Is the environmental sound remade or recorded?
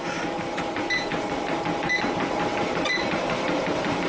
remade